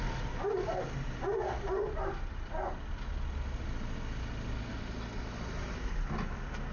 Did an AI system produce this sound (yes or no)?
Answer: no